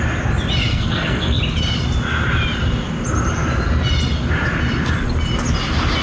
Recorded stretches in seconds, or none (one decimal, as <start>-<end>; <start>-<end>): 0.0-0.7; 1.4-6.0